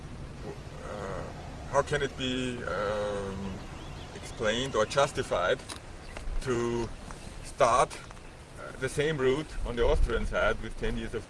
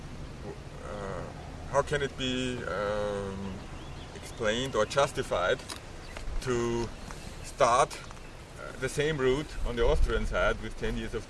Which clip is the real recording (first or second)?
second